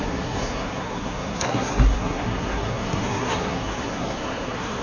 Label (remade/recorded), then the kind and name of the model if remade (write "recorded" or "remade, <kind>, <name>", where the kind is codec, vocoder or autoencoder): remade, codec, SNAC